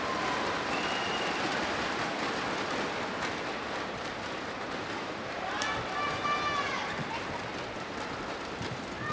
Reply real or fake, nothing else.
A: real